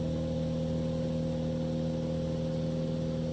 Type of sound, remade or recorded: recorded